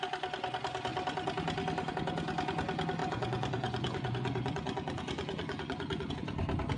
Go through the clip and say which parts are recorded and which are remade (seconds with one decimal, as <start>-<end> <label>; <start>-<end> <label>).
0.0-3.0 recorded; 3.0-6.1 remade; 6.1-6.8 recorded

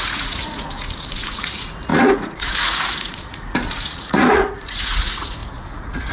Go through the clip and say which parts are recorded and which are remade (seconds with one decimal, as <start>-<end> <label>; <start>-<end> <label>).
0.0-6.1 remade

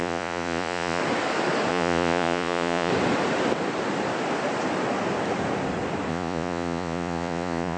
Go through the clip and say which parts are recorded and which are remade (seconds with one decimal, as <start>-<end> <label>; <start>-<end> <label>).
0.0-1.0 remade; 1.0-1.7 recorded; 1.7-2.9 remade; 2.9-6.1 recorded; 6.1-7.8 remade

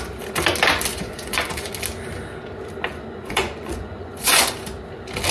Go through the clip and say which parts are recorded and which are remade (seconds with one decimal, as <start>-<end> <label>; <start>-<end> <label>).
0.0-0.9 recorded; 0.9-1.7 remade; 1.7-2.9 recorded; 2.9-4.5 remade; 4.5-5.3 recorded

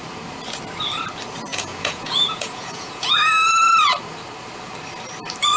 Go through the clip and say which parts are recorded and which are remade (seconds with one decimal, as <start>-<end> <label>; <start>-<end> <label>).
0.0-1.5 recorded; 1.5-3.1 remade; 3.1-5.6 recorded

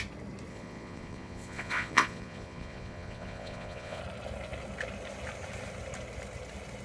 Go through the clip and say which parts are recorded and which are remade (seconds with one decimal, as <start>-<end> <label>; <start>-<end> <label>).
0.0-0.5 recorded; 0.5-4.0 remade; 4.0-6.8 recorded

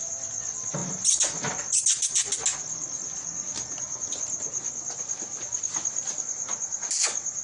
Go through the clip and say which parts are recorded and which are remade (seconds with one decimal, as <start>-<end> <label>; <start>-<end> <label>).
0.0-7.4 recorded